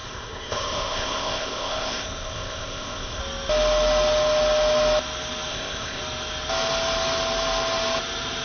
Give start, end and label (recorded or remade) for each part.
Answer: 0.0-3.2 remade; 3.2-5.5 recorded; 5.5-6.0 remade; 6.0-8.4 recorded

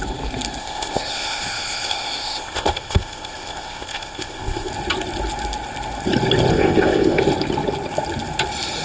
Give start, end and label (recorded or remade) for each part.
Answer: 0.0-0.6 recorded; 0.6-4.7 remade; 4.7-6.5 recorded; 6.5-7.2 remade; 7.2-8.8 recorded